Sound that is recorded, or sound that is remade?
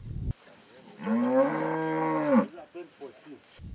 recorded